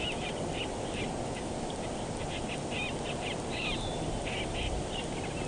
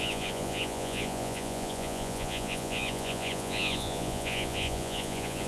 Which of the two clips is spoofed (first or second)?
second